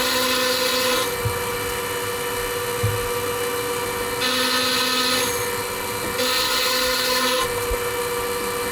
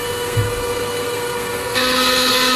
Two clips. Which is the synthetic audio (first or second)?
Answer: second